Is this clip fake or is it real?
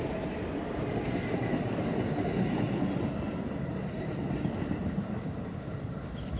real